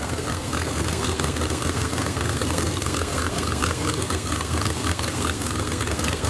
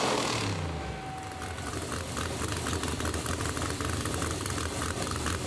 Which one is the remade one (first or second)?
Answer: first